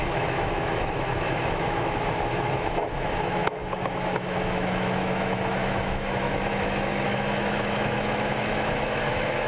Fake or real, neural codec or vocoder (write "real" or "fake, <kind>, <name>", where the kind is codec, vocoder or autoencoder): fake, autoencoder, DAC-VAE